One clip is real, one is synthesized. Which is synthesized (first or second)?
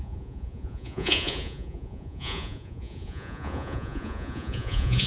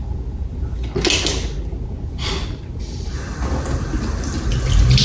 first